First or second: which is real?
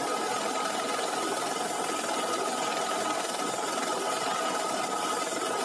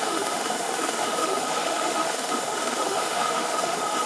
first